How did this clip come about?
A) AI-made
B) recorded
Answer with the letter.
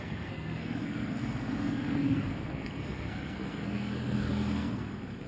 A